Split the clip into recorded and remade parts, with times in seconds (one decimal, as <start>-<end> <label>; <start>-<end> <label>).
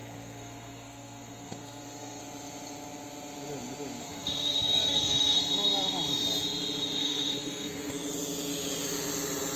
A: 0.0-2.2 remade; 2.2-4.0 recorded; 4.0-5.4 remade; 5.4-7.0 recorded; 7.0-7.9 remade; 7.9-9.6 recorded